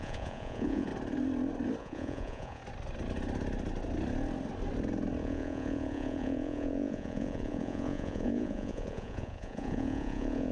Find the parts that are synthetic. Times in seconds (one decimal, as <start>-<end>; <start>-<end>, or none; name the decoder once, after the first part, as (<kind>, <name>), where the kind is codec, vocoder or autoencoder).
0.0-0.9 (vocoder, Vocos); 1.8-2.6; 5.2-10.5